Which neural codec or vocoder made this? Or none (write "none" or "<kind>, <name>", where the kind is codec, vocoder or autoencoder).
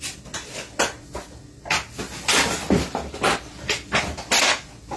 none